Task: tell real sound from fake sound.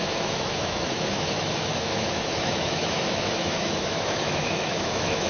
fake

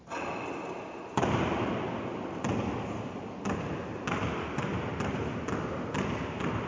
real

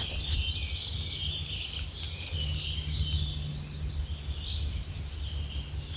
real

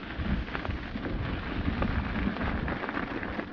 real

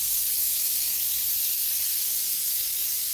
fake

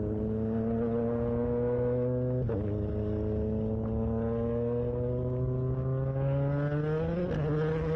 real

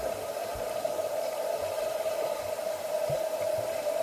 real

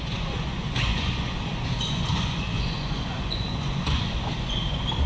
fake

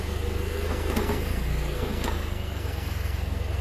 fake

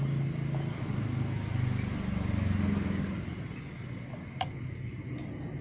real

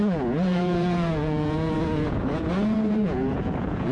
fake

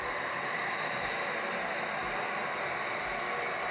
real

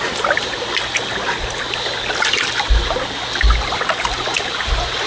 real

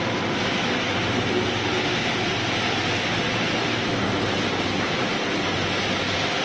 real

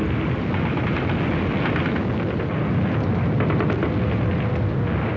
real